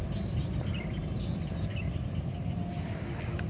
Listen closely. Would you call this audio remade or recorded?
recorded